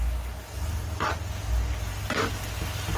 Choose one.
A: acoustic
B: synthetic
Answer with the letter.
A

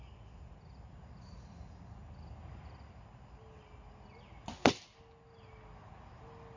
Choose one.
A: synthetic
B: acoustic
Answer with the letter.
B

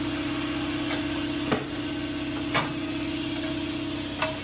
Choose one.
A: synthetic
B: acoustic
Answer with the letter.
B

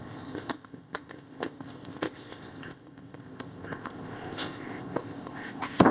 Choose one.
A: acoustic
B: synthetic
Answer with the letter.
B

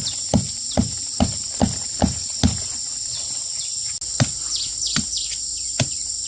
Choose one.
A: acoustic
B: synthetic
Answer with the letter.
A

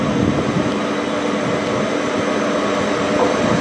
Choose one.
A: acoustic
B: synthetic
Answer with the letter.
A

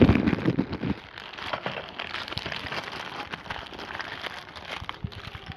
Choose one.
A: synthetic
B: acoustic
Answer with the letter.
B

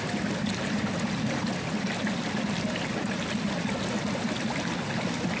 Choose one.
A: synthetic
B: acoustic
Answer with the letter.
B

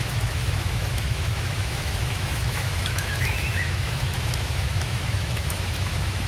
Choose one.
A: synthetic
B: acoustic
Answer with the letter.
A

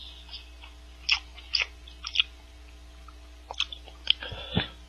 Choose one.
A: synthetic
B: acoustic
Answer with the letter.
B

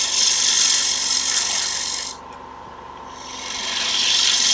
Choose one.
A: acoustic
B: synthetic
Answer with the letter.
A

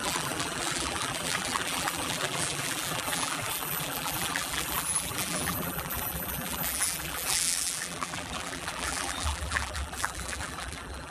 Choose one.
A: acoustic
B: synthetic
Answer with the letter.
B